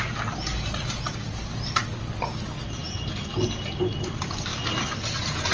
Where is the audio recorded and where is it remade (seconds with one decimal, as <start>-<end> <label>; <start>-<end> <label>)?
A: 0.0-5.5 recorded